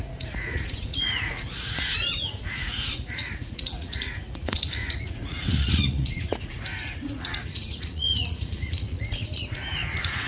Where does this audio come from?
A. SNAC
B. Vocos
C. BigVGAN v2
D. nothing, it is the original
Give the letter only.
B